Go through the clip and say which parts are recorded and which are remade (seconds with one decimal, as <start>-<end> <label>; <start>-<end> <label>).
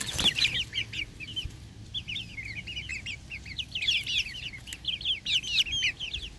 0.0-6.4 recorded